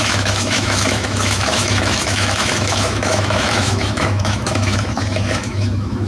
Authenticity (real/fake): fake